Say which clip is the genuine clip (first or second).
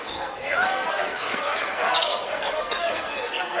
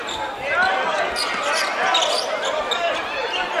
second